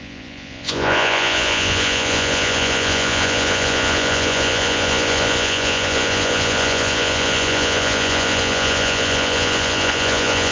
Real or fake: fake